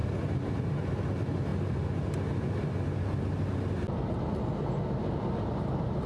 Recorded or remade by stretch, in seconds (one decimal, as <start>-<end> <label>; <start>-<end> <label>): 0.0-6.1 recorded

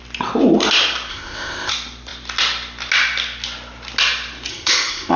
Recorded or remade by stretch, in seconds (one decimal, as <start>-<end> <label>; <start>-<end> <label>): 0.0-1.1 recorded; 1.1-1.7 remade; 1.7-4.5 recorded; 4.5-5.2 remade

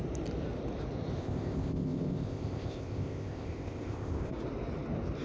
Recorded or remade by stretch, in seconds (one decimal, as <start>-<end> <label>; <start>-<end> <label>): 0.0-1.2 recorded; 1.2-4.3 remade; 4.3-5.2 recorded

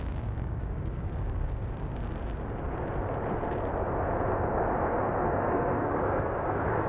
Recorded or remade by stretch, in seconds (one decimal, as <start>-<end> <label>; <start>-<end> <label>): 0.0-1.6 remade; 1.6-5.3 recorded; 5.3-6.9 remade

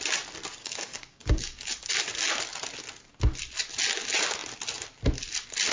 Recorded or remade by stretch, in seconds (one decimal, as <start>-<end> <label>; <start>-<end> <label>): 0.0-0.6 recorded; 0.6-1.9 remade; 1.9-5.7 recorded

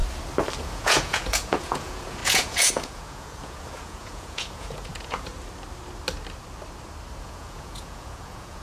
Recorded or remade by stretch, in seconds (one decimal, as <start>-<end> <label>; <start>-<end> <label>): 0.0-0.6 recorded; 0.6-5.3 remade; 5.3-7.2 recorded; 7.2-8.6 remade

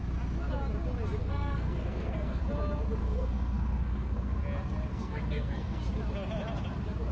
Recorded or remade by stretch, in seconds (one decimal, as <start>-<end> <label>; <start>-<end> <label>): 0.0-1.2 recorded; 1.2-2.4 remade; 2.4-3.0 recorded; 3.0-4.4 remade; 4.4-4.9 recorded; 4.9-5.8 remade; 5.8-7.1 recorded